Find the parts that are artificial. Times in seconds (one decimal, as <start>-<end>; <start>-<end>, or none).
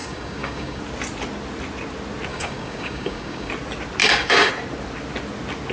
0.0-0.8; 2.3-3.5; 4.0-4.5